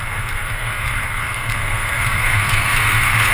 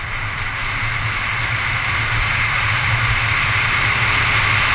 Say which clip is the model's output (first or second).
first